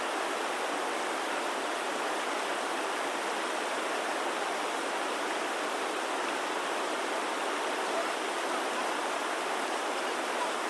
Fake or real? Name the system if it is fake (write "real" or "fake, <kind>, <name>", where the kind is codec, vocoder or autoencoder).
real